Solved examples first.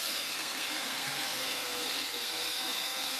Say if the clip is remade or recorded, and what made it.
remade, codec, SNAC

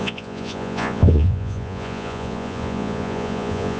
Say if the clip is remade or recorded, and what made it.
remade, vocoder, Vocos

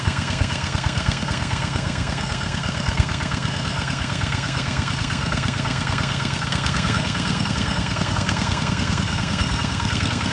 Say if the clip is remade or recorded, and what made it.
remade, codec, SNAC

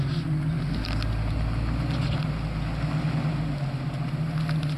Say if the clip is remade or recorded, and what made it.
recorded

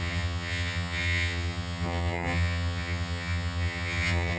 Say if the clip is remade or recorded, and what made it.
remade, vocoder, HiFi-GAN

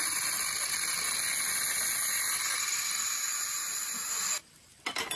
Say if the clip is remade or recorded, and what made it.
recorded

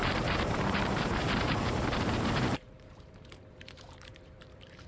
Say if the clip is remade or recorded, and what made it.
remade, vocoder, BigVGAN v2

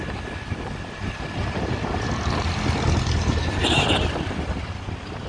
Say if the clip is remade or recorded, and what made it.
recorded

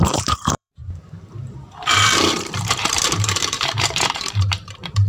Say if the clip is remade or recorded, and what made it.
remade, vocoder, BigVGAN v2